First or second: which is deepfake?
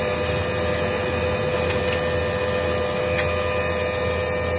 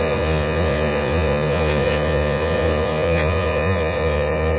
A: second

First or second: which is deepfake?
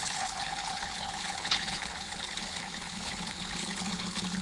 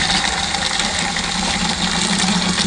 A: first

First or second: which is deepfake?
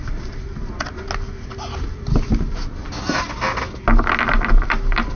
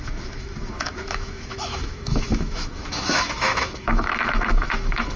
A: second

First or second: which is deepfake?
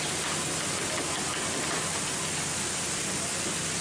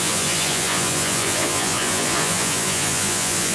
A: second